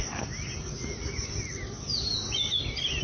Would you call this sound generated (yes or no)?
no